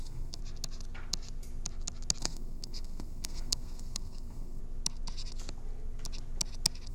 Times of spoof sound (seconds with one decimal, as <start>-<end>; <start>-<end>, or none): 0.0-0.4; 2.2-4.6